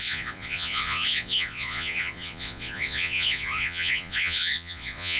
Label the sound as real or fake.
fake